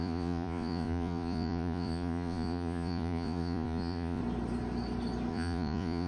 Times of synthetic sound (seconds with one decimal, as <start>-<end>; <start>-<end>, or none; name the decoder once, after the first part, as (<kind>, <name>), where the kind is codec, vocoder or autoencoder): 0.0-4.2 (vocoder, Vocos); 5.3-6.1